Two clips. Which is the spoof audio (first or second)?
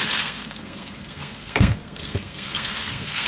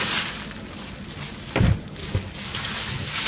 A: first